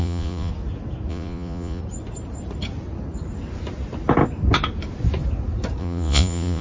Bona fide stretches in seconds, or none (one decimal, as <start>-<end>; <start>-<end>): 0.5-1.1; 1.8-5.8